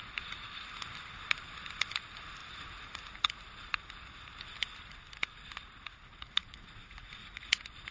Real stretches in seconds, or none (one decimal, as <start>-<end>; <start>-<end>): 0.0-6.4; 7.5-7.9

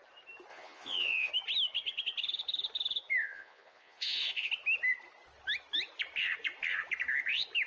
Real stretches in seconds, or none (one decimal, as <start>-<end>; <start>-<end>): 0.0-0.5; 1.3-3.2; 4.5-7.7

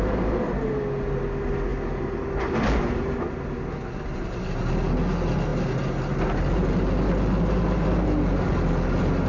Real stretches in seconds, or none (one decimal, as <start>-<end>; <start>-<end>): 0.0-9.3

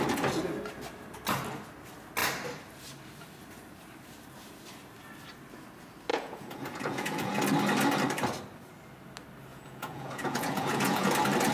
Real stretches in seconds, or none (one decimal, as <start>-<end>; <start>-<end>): 0.0-6.1; 7.4-9.5; 11.1-11.5

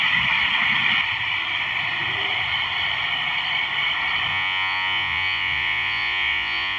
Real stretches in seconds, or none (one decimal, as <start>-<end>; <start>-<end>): 0.0-4.3

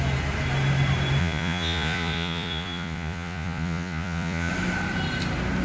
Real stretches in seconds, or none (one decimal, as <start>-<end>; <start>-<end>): 0.0-1.2; 4.5-5.6